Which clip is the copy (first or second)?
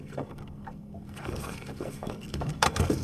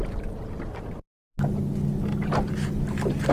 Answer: first